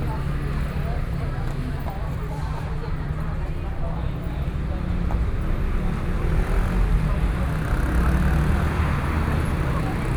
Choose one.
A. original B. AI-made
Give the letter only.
A